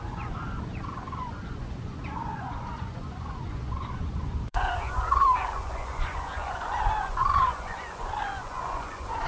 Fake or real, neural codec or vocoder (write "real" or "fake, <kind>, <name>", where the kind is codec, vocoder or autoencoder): fake, vocoder, Vocos